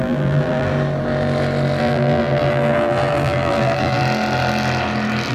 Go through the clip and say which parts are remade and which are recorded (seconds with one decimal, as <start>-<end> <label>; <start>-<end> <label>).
0.0-0.7 remade; 0.7-1.8 recorded; 1.8-4.0 remade; 4.0-5.3 recorded